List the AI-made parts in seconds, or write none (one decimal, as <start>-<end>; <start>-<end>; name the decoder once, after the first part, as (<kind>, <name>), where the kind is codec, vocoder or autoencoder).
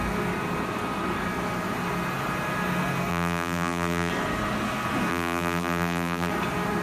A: 3.1-4.1 (vocoder, BigVGAN v2); 5.1-6.3